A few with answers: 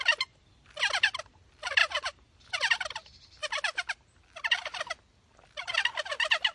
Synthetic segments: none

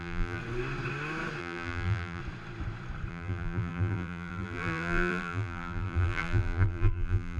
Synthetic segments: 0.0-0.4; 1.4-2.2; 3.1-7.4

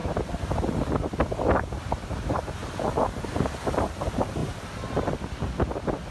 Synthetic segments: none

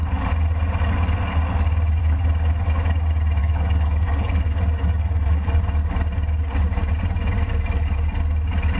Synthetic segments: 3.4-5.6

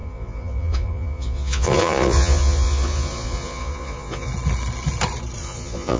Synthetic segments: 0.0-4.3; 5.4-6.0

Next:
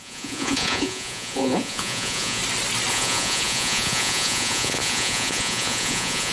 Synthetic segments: 0.0-2.4; 2.9-6.3

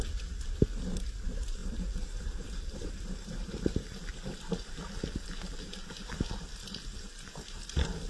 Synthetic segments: 1.6-3.6; 4.1-4.8

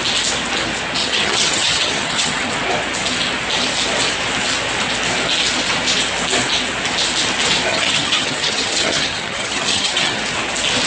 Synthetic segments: 1.0-2.5; 7.7-10.2